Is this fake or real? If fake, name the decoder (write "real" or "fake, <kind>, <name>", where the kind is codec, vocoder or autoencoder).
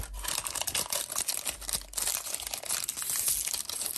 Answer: real